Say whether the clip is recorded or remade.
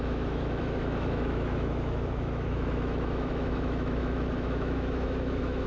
remade